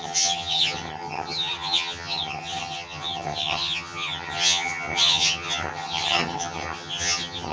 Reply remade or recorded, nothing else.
remade